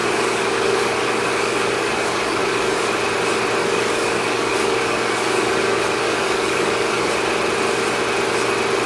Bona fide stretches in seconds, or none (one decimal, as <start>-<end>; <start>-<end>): 2.9-3.6; 7.1-8.9